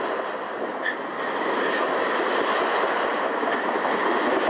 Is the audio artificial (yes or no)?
no